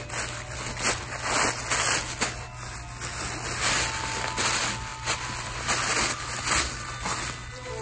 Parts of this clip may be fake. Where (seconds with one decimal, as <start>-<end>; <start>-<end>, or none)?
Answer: none